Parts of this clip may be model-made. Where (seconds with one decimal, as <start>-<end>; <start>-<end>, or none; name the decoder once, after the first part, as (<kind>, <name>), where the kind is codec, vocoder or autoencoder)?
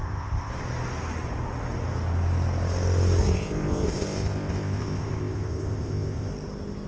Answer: 0.0-0.5 (codec, ZipCodec); 3.2-6.3